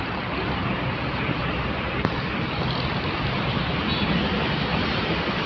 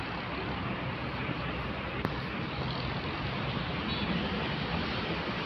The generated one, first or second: first